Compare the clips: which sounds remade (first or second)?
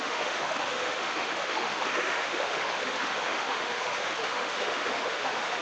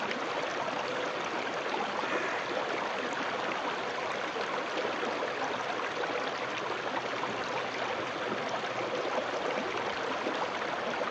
first